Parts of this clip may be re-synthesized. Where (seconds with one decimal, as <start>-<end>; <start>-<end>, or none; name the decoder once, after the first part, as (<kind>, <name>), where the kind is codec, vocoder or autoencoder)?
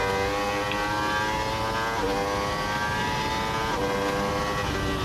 none